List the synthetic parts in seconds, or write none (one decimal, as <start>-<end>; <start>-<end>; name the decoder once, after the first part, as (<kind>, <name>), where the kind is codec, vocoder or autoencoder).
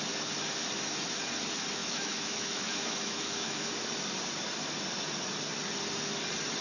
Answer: 1.8-3.7 (autoencoder, DAC-VAE)